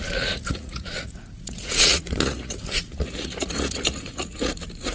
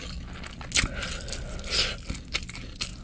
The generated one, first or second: first